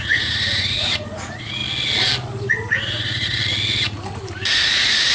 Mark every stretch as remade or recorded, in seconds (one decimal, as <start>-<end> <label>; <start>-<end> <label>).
0.0-1.6 remade; 1.6-2.5 recorded; 2.5-3.4 remade; 3.4-4.5 recorded; 4.5-5.1 remade